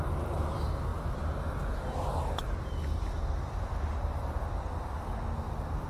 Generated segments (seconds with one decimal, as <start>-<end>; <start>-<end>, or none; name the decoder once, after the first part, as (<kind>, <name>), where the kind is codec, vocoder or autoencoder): none